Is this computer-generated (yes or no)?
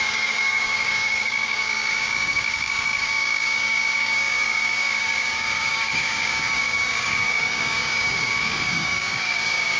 yes